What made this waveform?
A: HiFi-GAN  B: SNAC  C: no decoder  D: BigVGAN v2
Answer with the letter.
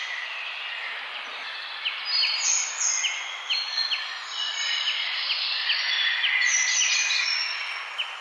C